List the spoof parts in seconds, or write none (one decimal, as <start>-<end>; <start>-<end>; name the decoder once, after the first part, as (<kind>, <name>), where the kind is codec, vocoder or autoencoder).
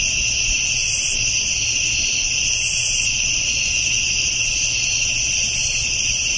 none